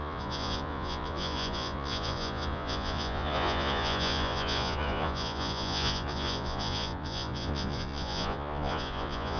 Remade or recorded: remade